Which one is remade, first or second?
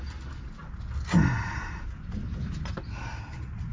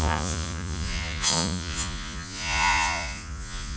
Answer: second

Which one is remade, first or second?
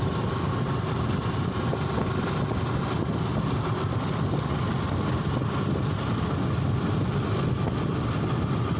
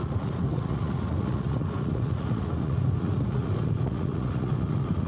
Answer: second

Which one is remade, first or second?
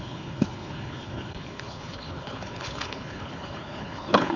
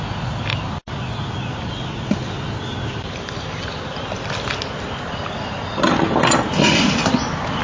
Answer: first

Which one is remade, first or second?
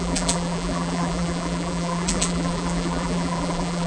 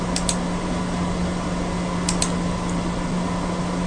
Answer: first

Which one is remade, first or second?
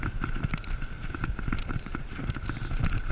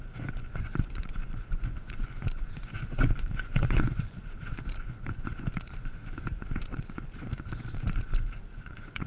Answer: second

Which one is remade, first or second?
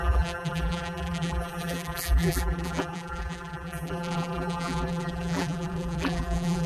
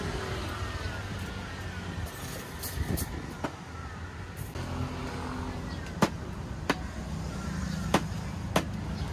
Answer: first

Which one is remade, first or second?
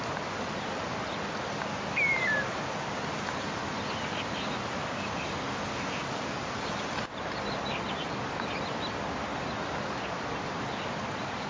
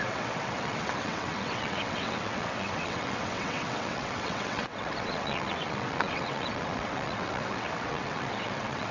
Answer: second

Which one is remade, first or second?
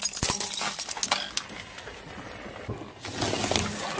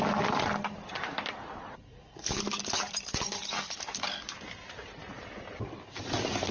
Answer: second